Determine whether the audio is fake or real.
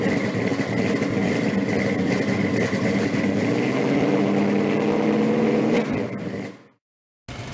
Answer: real